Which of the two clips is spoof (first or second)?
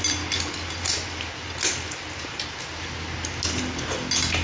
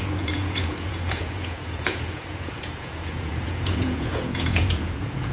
second